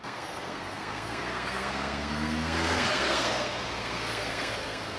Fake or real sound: fake